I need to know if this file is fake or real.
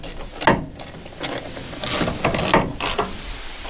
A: real